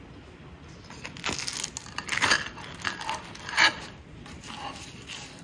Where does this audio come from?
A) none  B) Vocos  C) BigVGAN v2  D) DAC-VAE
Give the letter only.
A